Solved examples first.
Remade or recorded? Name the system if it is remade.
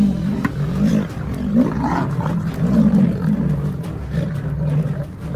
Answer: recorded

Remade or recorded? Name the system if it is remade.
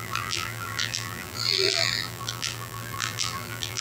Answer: remade, vocoder, BigVGAN v2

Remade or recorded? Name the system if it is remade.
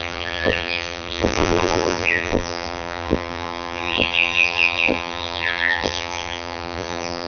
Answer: remade, vocoder, BigVGAN v2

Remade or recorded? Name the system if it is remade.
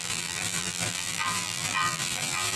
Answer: remade, vocoder, BigVGAN v2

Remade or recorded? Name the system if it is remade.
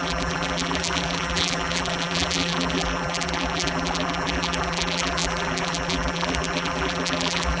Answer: remade, vocoder, BigVGAN v2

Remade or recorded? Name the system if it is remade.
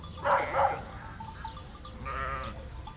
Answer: remade, vocoder, BigVGAN v2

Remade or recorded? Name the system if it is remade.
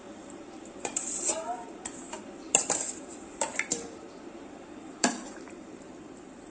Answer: remade, vocoder, BigVGAN v2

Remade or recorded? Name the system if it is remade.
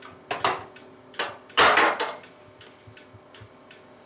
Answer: recorded